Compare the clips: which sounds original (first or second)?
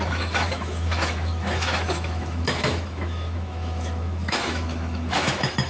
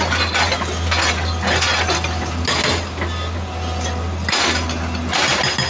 second